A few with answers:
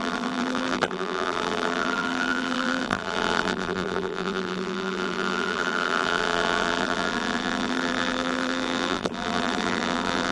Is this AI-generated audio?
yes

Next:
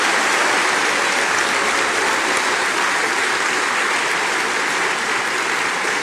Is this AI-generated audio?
no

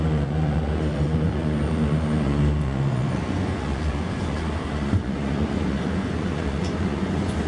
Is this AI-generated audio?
yes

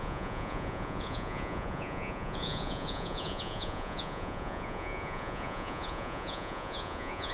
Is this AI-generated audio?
yes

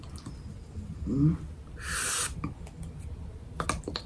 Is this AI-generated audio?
no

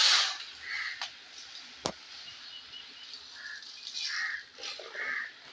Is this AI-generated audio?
no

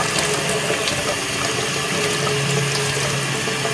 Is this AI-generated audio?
no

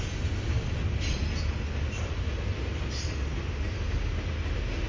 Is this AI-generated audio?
no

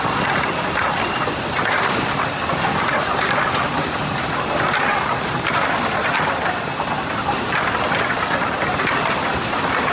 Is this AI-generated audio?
no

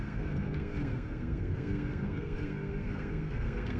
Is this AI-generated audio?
yes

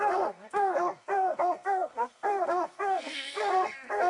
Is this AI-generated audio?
yes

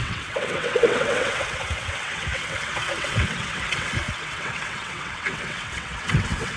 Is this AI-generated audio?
yes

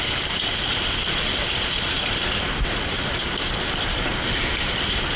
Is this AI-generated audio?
yes